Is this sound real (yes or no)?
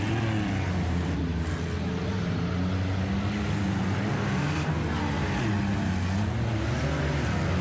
yes